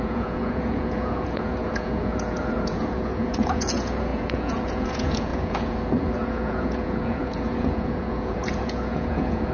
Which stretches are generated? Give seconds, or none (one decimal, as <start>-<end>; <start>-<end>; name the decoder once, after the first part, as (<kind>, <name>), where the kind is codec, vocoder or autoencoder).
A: 0.0-9.5 (vocoder, Vocos)